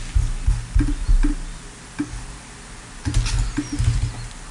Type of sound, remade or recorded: recorded